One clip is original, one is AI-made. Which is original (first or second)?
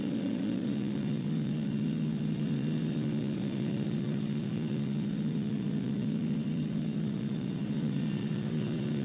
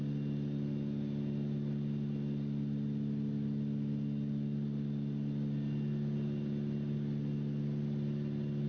second